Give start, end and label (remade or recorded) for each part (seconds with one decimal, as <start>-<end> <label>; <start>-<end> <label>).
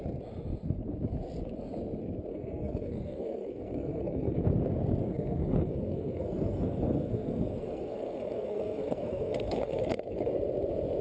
0.0-2.3 recorded; 2.3-4.4 remade; 4.4-5.0 recorded; 5.0-10.3 remade; 10.3-11.0 recorded